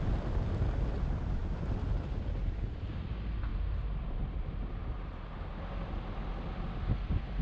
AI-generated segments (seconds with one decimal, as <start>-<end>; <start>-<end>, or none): 1.4-2.9; 3.5-5.9